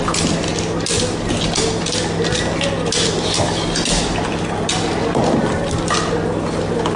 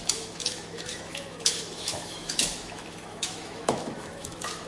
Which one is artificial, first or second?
second